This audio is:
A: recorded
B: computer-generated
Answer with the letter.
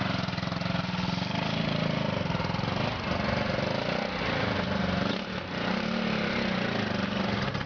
A